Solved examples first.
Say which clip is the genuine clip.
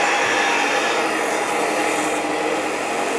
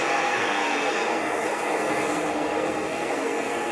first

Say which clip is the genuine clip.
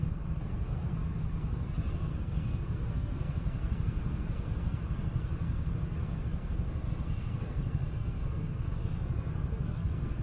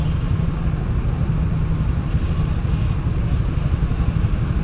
second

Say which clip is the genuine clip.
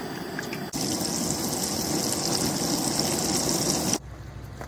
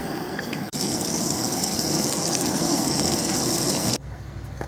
first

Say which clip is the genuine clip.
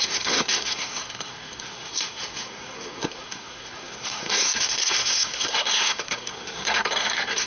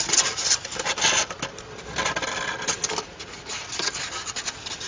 second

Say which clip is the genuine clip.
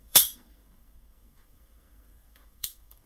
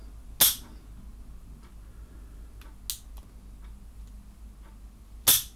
second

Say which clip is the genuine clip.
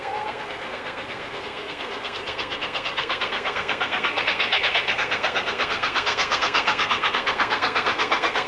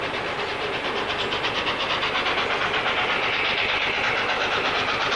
second